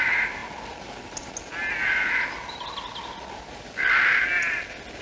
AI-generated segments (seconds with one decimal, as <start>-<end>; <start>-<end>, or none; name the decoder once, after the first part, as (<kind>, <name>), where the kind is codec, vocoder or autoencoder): none